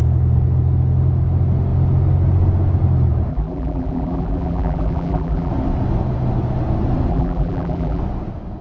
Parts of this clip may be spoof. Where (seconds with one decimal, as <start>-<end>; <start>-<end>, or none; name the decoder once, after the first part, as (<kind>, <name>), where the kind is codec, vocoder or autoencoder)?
3.3-5.5 (vocoder, BigVGAN v2); 7.1-8.0